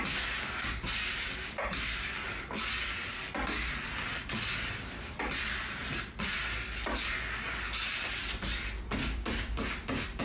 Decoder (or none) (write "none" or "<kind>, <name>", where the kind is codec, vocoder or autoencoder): none